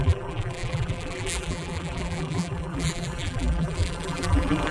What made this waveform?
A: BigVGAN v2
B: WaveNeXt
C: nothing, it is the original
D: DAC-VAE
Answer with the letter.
A